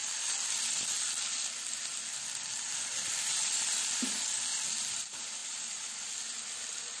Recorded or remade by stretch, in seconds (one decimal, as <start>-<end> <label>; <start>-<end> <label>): 0.0-7.0 recorded